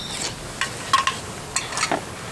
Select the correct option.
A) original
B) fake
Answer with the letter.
A